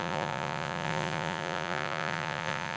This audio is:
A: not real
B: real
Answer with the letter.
A